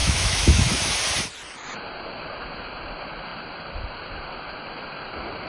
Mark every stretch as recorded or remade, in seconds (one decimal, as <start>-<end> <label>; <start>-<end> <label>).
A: 0.0-1.0 remade; 1.0-5.5 recorded